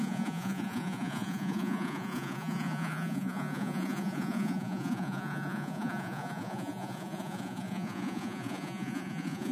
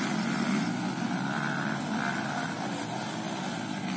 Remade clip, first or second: first